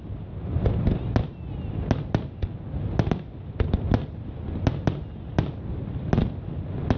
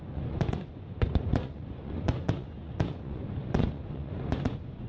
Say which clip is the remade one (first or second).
second